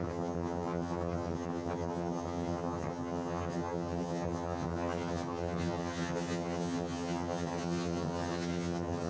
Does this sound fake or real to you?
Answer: fake